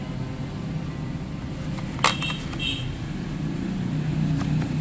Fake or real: real